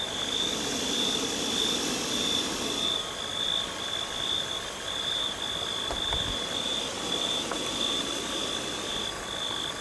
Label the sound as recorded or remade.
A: remade